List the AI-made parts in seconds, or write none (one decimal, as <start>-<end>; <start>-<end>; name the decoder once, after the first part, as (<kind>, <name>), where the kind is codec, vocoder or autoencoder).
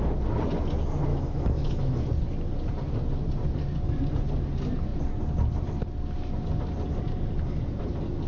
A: 1.1-2.0 (autoencoder, DAC-VAE)